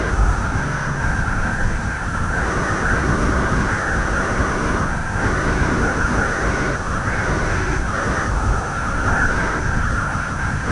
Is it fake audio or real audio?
fake